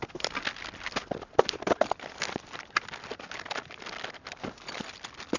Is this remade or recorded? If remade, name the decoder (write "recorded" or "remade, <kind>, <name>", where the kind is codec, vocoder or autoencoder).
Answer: recorded